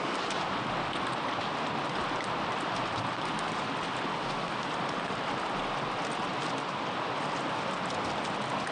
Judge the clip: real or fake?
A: real